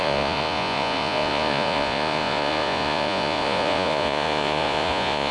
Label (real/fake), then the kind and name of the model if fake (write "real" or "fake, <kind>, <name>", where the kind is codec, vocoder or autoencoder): fake, vocoder, Vocos